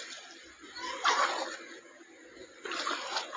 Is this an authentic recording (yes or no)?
yes